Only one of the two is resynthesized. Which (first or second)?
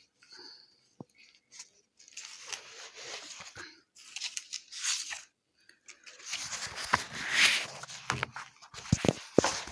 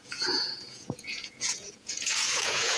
second